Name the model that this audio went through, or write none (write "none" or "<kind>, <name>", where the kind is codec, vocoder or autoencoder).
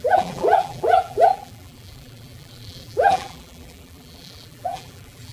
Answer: vocoder, BigVGAN v2